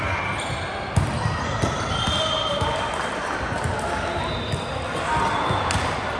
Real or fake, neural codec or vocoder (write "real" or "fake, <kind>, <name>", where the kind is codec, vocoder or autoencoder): real